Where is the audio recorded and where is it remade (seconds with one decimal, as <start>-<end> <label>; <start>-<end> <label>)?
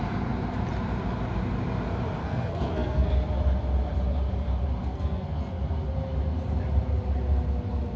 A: 0.0-2.2 recorded; 2.2-3.1 remade; 3.1-4.8 recorded; 4.8-5.6 remade; 5.6-8.0 recorded